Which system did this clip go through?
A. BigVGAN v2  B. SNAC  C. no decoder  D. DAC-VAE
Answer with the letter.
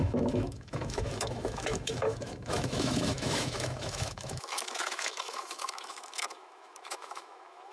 D